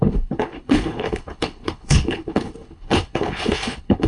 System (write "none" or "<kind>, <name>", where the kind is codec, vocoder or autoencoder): codec, HILCodec